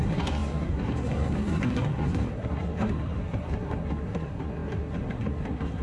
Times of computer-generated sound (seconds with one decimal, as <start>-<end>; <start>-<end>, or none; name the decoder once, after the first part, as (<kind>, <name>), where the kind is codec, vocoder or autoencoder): 0.0-5.8 (codec, SNAC)